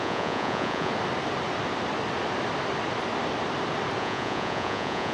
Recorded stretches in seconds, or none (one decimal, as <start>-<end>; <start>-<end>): 0.9-4.0